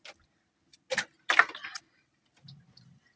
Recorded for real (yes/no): yes